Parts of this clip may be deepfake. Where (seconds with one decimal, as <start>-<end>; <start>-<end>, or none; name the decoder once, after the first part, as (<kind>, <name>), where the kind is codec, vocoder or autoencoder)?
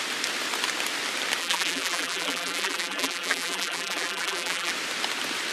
1.4-4.7 (vocoder, BigVGAN v2)